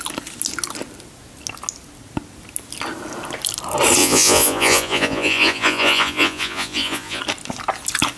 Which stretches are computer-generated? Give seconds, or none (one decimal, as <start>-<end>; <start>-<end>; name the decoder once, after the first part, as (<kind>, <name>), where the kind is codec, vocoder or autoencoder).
4.0-7.2 (vocoder, Vocos)